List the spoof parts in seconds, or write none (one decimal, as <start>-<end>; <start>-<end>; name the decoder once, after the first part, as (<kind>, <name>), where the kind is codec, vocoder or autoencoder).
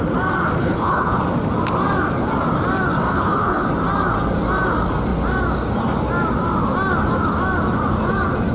0.6-1.2 (codec, HILCodec); 3.1-3.7